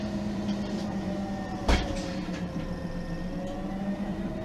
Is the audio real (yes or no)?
no